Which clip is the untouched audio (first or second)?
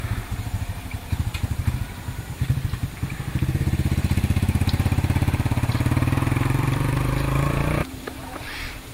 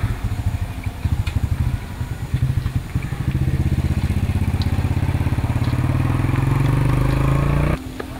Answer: second